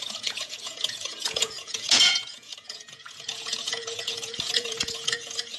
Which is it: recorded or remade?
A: remade